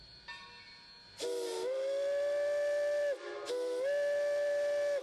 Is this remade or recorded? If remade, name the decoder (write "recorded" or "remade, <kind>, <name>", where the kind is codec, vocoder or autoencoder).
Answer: recorded